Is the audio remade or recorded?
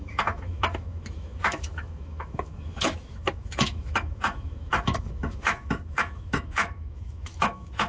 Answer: remade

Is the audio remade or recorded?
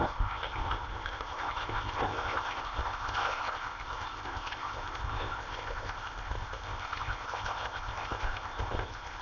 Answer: remade